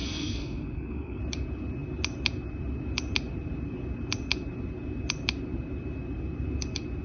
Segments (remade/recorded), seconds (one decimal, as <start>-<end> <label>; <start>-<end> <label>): 0.0-1.2 remade; 1.2-7.0 recorded